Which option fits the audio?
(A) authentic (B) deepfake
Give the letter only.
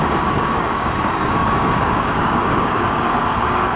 B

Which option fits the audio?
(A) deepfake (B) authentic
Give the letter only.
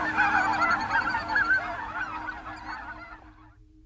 B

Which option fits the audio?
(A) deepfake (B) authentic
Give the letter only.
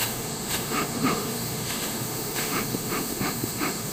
A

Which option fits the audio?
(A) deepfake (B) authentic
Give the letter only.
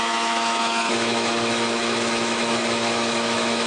A